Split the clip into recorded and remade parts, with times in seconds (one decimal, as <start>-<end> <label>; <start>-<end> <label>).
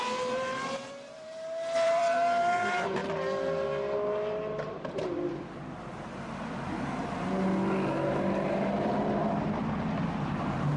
0.0-3.0 remade; 3.0-4.5 recorded; 4.5-5.0 remade; 5.0-8.1 recorded; 8.1-9.2 remade; 9.2-10.4 recorded; 10.4-10.8 remade